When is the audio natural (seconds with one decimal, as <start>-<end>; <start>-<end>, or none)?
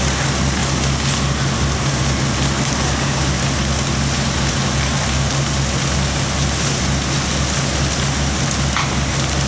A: 0.0-9.5